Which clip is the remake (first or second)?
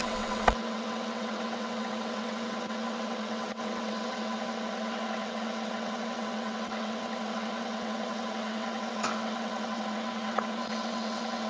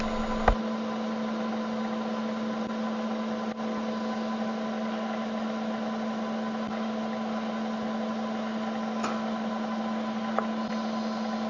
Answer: first